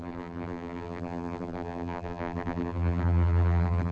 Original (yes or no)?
no